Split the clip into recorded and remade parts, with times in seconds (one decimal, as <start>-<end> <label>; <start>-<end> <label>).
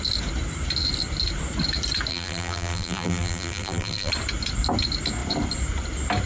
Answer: 0.0-2.1 recorded; 2.1-4.1 remade; 4.1-6.3 recorded